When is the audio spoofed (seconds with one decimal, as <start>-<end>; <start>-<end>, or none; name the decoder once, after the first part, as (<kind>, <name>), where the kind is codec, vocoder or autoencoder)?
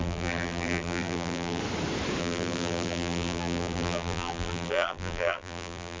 0.0-1.6 (vocoder, BigVGAN v2); 2.2-6.0